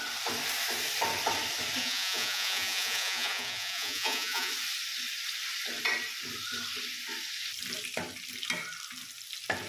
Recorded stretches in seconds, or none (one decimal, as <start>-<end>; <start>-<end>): 0.0-1.8; 4.5-9.7

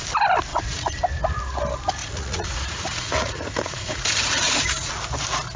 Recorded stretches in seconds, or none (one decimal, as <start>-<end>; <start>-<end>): 0.0-0.5; 1.0-2.0; 4.9-5.6